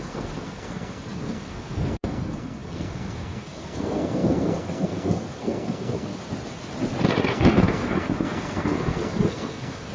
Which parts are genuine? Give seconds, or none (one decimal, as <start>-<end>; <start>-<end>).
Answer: 6.2-7.3

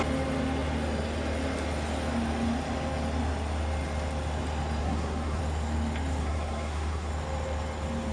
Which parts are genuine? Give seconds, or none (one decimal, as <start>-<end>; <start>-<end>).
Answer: 0.0-4.8; 5.4-6.2; 7.1-8.1

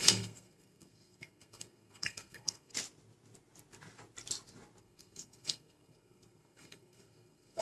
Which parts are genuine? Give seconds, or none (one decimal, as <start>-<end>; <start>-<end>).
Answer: 2.7-4.8

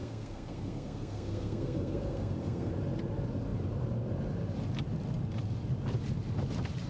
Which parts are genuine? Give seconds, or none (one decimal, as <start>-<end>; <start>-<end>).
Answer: 2.7-6.9